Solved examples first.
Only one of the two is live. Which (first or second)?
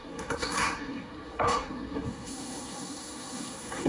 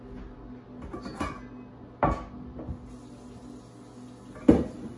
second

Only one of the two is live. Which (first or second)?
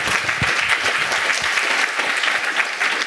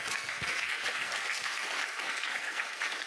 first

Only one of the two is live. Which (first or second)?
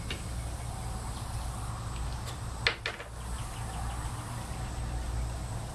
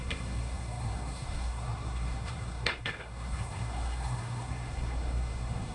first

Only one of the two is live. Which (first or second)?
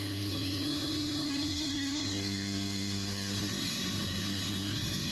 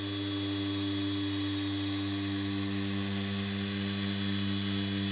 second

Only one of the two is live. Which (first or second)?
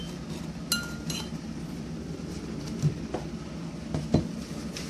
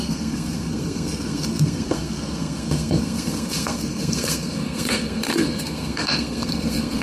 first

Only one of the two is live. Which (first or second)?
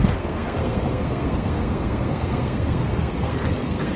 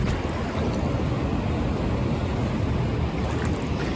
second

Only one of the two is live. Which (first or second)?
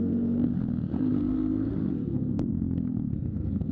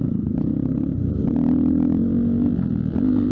second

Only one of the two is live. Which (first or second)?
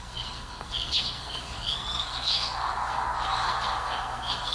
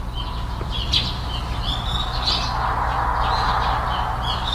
second